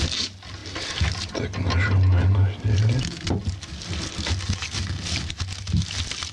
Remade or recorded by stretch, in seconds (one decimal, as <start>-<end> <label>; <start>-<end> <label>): 0.0-0.6 remade; 0.6-1.3 recorded; 1.3-3.4 remade; 3.4-5.6 recorded; 5.6-6.3 remade